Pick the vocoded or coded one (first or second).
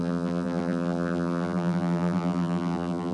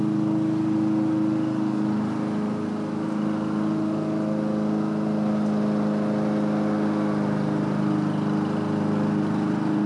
first